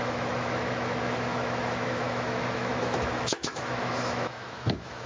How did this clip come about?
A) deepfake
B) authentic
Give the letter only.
A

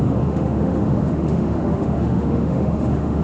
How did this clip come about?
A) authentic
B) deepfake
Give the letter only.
B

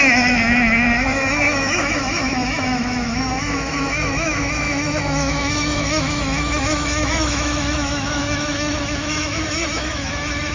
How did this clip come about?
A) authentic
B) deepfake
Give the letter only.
B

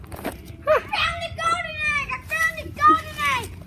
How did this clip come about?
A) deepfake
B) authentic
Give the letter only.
B